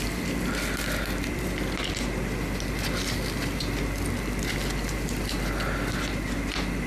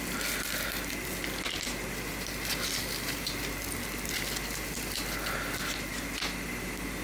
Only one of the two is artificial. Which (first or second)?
first